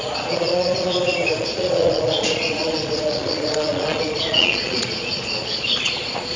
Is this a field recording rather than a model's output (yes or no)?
no